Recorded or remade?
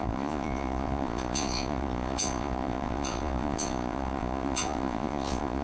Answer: remade